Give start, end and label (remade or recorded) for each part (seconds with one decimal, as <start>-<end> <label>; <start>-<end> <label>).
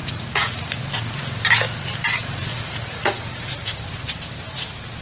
0.0-0.8 remade; 0.8-2.5 recorded; 2.5-3.8 remade; 3.8-5.0 recorded